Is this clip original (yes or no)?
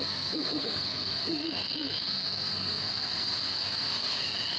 no